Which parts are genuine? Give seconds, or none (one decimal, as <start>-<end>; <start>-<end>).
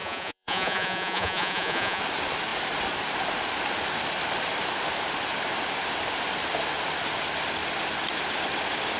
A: 2.0-9.0